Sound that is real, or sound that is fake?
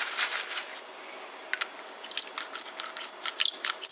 real